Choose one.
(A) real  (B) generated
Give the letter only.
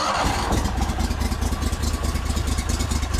A